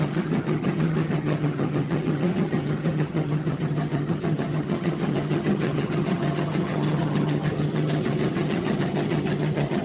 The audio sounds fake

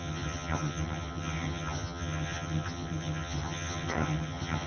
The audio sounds fake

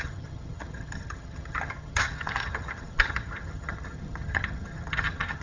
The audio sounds fake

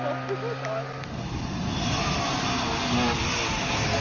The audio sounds real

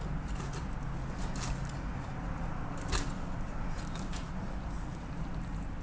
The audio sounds real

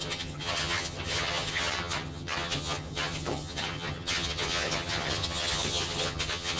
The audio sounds fake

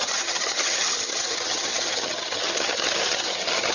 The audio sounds fake